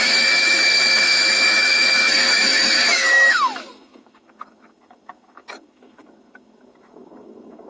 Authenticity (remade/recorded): remade